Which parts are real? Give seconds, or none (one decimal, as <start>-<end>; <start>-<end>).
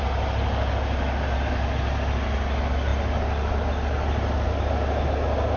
0.0-5.6